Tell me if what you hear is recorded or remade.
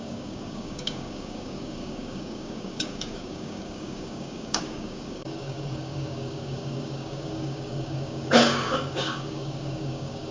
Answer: remade